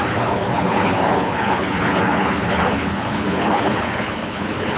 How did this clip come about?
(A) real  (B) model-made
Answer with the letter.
B